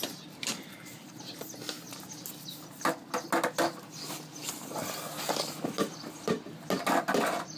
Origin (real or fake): real